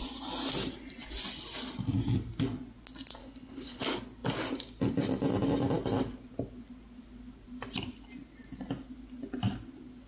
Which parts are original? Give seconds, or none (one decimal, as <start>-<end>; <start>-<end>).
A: 0.0-3.2; 3.8-10.1